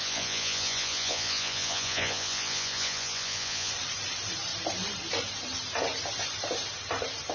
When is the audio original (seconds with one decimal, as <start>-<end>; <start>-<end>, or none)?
3.7-7.3